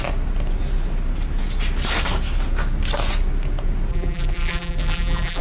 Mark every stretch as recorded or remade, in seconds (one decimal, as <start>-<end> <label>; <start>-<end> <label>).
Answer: 0.0-3.9 recorded; 3.9-5.4 remade